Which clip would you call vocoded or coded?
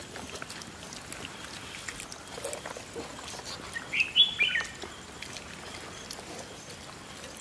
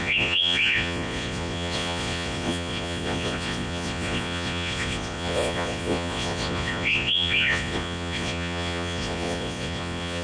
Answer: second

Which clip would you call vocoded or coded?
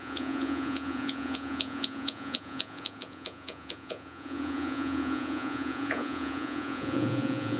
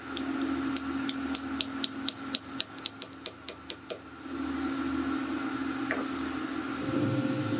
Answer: first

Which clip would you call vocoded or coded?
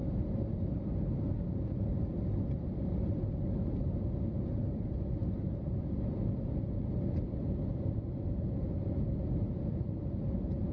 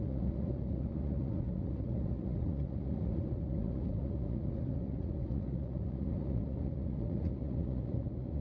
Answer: second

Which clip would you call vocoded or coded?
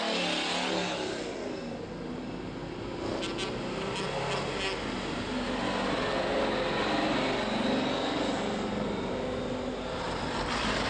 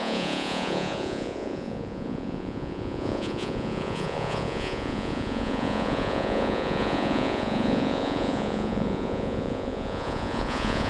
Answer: second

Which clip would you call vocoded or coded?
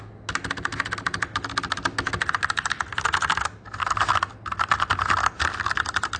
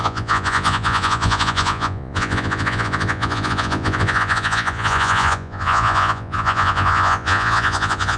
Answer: second